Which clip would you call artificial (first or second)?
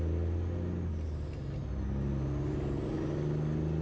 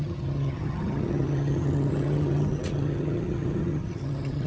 second